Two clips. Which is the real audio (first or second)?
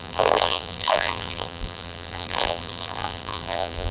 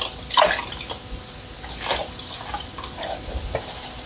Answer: second